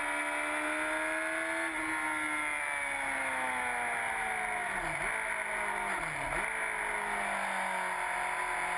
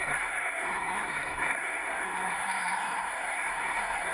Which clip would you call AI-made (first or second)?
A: second